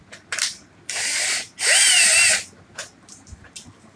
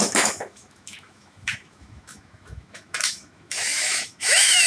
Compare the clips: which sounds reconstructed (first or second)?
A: second